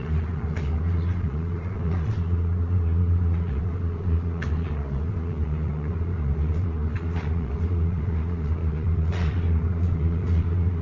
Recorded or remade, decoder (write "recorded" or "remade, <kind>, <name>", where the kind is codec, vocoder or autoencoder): remade, vocoder, Vocos